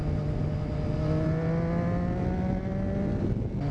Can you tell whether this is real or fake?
real